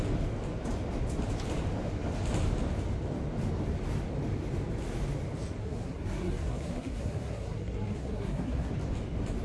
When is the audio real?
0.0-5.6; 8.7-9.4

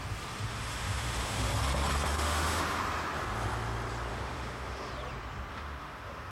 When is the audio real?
0.0-0.5; 1.5-2.1; 2.8-4.1; 4.9-5.5

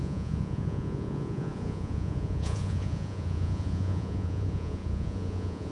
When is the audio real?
none

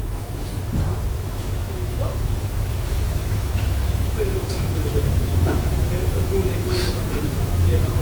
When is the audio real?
0.5-1.2

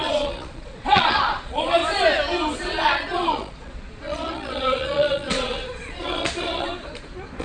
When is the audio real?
1.8-2.6; 6.7-7.4

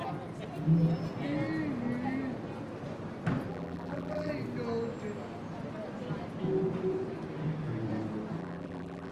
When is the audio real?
0.0-3.5; 4.3-8.4